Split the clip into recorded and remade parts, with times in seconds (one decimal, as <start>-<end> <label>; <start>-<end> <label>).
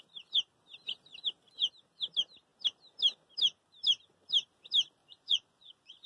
0.0-5.0 recorded; 5.0-6.1 remade